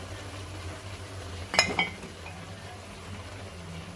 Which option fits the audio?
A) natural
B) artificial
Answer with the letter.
A